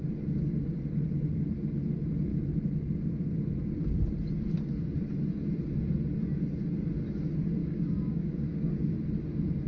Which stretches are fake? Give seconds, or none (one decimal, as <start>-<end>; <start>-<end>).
7.6-8.7